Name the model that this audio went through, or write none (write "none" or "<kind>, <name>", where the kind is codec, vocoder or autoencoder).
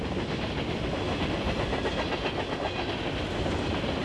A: none